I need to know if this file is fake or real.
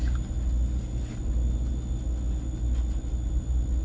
real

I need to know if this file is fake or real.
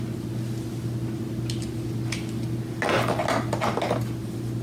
real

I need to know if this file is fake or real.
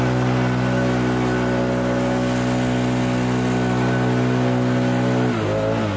real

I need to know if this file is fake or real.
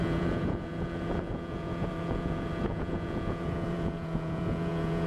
fake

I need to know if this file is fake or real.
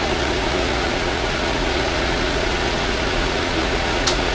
fake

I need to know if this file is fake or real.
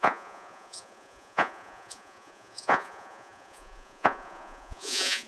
fake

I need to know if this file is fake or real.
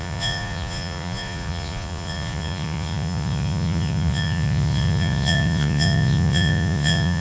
fake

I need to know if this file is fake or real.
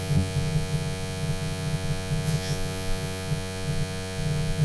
fake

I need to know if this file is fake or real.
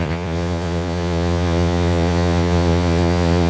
fake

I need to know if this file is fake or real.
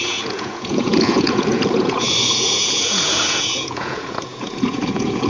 fake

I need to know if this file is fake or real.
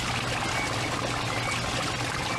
real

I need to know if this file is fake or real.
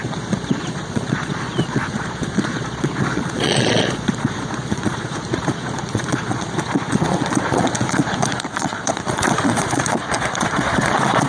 fake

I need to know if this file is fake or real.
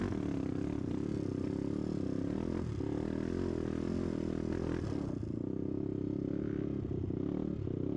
real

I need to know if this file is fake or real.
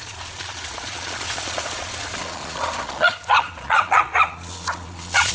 fake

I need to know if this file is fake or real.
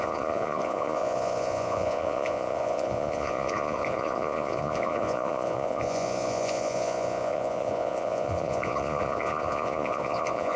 fake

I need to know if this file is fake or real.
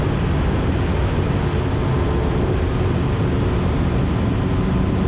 real